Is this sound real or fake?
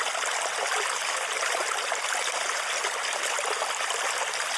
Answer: real